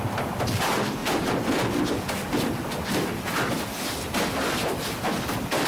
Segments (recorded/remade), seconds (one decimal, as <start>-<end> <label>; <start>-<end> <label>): 0.0-5.7 recorded